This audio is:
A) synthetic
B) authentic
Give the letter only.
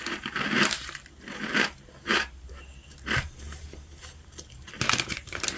A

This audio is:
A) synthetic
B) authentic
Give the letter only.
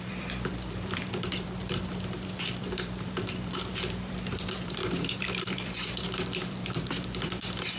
A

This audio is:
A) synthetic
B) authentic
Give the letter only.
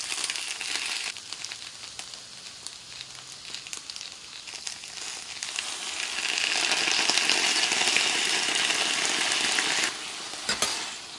B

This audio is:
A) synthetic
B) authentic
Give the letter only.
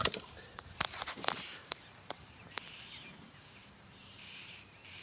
A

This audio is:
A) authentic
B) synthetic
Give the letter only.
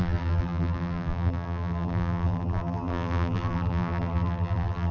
B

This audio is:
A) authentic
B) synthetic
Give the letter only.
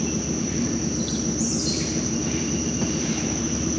B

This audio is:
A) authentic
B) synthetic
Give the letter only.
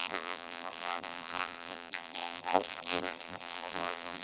B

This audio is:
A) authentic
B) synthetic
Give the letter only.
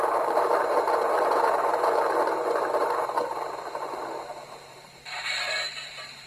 B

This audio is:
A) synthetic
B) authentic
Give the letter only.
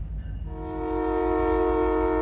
B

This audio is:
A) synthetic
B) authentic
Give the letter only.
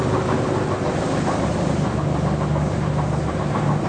B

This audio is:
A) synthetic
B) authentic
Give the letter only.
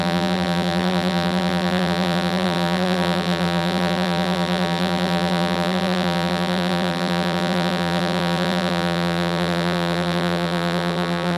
A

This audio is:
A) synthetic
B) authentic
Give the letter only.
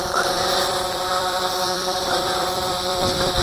A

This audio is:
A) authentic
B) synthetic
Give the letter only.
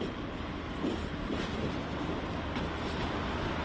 A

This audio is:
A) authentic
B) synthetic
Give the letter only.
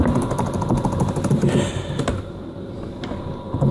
A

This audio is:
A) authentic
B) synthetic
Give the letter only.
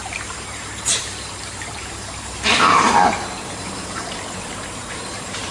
B